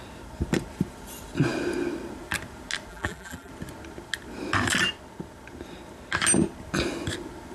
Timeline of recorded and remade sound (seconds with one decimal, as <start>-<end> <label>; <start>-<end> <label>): 0.0-2.9 recorded; 2.9-3.5 remade; 3.5-7.5 recorded